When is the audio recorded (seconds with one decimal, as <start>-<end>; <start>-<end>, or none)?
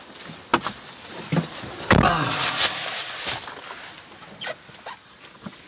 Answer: 0.0-5.7